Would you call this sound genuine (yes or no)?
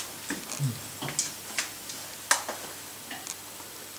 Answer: yes